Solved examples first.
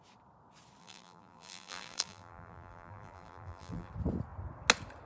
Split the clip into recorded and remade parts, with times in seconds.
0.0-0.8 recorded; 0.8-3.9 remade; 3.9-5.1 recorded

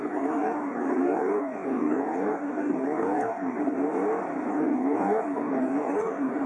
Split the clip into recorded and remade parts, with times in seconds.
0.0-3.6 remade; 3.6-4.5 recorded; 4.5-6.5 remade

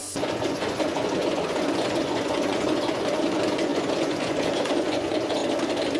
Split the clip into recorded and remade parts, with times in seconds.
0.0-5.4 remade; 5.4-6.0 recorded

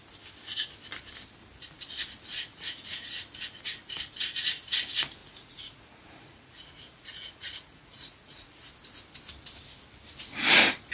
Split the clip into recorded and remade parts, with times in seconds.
0.0-2.5 recorded; 2.5-3.1 remade; 3.1-5.2 recorded; 5.2-8.7 remade; 8.7-10.9 recorded

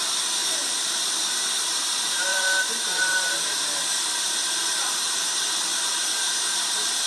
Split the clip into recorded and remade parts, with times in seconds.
0.0-0.4 recorded; 0.4-1.6 remade; 1.6-2.3 recorded; 2.3-6.6 remade; 6.6-7.1 recorded

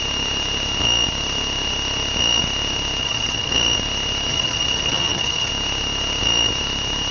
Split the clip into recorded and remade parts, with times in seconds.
0.0-3.0 recorded; 3.0-3.5 remade; 3.5-4.3 recorded; 4.3-5.5 remade; 5.5-7.1 recorded